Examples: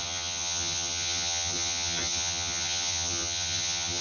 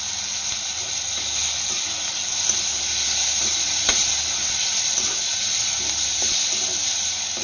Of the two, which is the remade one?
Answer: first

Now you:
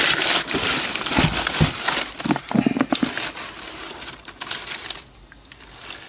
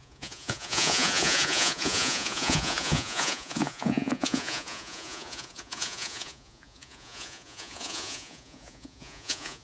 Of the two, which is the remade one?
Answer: second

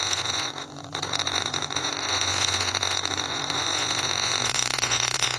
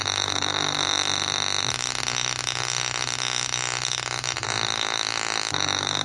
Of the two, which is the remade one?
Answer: first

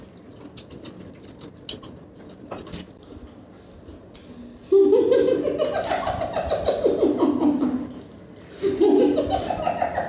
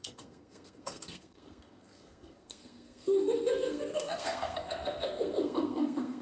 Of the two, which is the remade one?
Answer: second